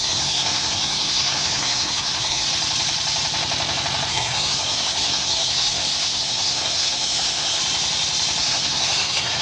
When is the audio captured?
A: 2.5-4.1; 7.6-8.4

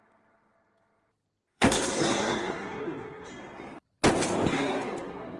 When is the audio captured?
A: 0.0-1.4; 3.3-4.5

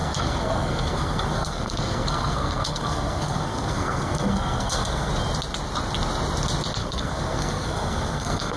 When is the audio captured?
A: 5.1-6.8

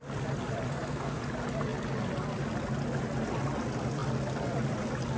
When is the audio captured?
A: 0.0-0.7; 1.2-5.2

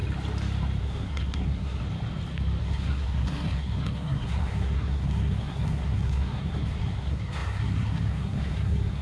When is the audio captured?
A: 0.0-0.8; 1.8-2.6

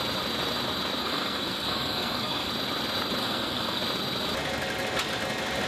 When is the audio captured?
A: 0.0-1.0; 2.5-3.2; 3.8-5.7

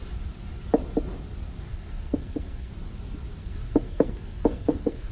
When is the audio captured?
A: 0.0-1.7; 2.7-3.4

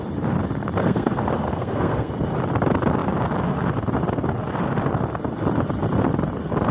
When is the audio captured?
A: 0.0-0.8; 2.1-6.7